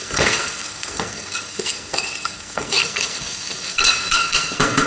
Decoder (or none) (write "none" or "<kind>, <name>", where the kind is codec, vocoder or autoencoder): codec, SNAC